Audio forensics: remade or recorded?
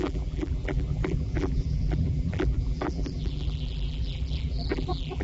remade